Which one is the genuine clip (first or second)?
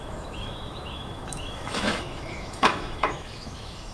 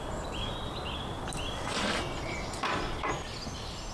second